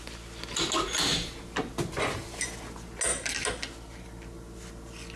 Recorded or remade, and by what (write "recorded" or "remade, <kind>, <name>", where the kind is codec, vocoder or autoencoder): recorded